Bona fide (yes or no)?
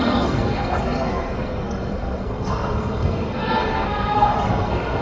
no